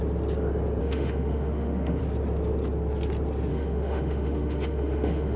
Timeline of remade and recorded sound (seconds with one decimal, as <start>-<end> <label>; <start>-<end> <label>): 0.0-0.8 recorded; 0.8-2.0 remade; 2.0-3.5 recorded; 3.5-5.4 remade